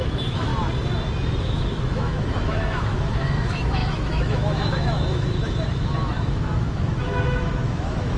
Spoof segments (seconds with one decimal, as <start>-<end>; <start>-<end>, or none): 0.0-0.5; 1.4-8.2